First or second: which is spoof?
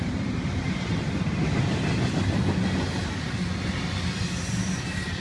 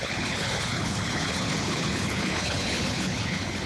second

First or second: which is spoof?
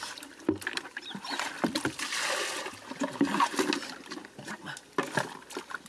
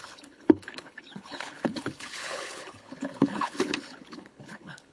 second